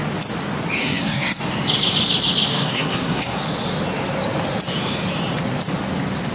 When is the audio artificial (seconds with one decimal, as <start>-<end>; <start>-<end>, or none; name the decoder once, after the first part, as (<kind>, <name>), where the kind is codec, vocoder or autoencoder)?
0.8-1.4 (codec, SNAC); 2.5-3.4